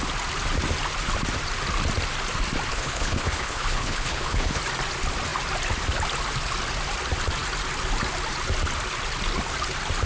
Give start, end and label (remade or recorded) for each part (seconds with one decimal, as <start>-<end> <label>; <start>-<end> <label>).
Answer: 0.0-2.7 recorded; 2.7-4.6 remade; 4.6-10.1 recorded